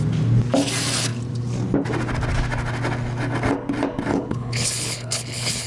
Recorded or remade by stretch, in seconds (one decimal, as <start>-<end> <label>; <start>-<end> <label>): 0.0-4.1 recorded; 4.1-5.7 remade